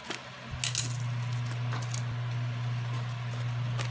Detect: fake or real real